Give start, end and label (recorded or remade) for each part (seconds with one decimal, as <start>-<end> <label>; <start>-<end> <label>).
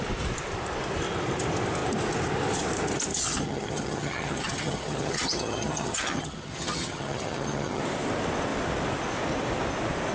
0.0-3.1 recorded; 3.1-7.8 remade; 7.8-10.1 recorded